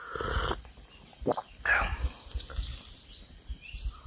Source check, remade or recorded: recorded